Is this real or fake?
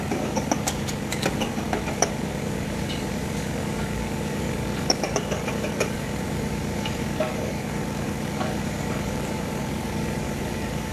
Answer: fake